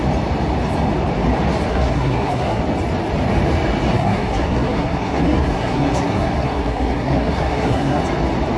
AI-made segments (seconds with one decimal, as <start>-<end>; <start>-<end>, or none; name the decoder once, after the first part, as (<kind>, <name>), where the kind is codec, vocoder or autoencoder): 1.7-2.6 (codec, SNAC); 3.9-8.0